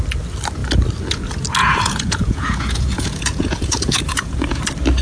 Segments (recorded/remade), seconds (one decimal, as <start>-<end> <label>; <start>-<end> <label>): 0.0-1.6 recorded; 1.6-4.6 remade; 4.6-5.0 recorded